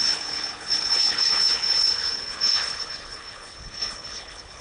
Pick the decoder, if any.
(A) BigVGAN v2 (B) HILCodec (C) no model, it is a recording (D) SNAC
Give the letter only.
B